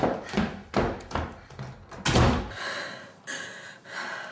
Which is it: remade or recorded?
recorded